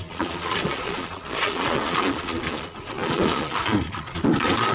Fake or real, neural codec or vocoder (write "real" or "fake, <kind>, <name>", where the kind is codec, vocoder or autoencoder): fake, vocoder, Vocos